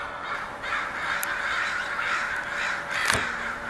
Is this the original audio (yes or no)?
yes